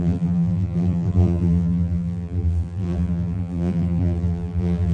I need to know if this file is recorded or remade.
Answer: remade